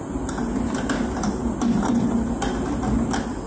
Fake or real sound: real